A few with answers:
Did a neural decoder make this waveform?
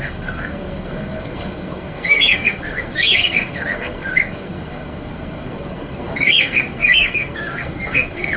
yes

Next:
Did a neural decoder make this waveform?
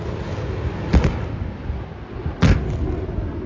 no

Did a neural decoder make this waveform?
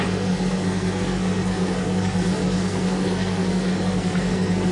yes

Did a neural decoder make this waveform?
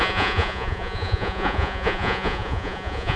yes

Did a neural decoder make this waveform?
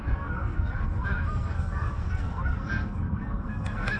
yes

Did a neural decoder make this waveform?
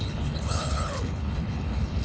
yes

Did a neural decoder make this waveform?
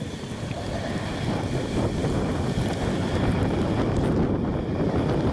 no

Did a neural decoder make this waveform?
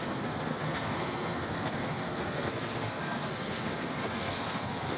yes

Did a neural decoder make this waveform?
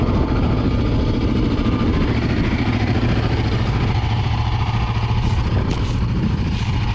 no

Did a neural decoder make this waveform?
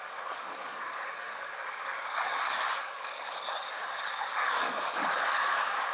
yes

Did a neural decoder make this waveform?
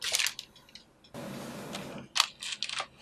no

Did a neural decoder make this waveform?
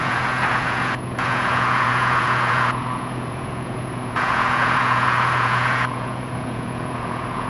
yes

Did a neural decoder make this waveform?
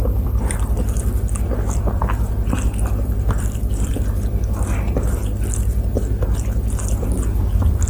yes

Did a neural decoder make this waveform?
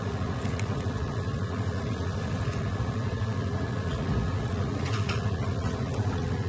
yes